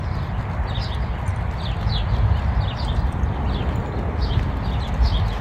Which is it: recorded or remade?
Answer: recorded